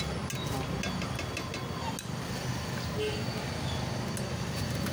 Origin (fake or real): real